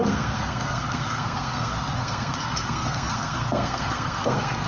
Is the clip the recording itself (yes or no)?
no